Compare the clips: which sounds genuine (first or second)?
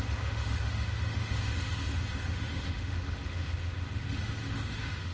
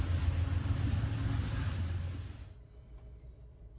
second